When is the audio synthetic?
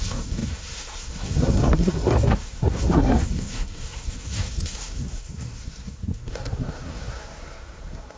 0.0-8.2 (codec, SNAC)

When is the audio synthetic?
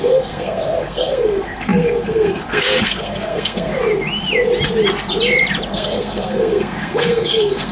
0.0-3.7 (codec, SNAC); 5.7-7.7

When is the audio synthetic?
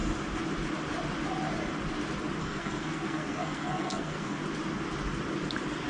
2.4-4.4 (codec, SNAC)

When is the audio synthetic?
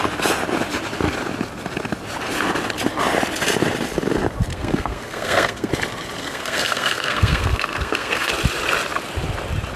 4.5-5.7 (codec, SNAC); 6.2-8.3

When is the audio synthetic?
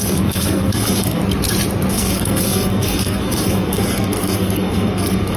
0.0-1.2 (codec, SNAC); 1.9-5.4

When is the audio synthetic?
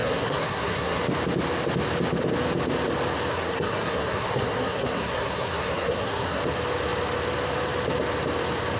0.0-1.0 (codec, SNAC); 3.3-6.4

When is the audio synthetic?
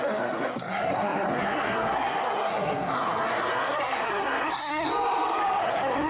0.0-4.9 (codec, SNAC); 5.6-6.1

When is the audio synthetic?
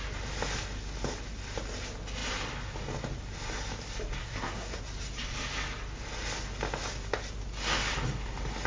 4.2-4.8 (codec, SNAC)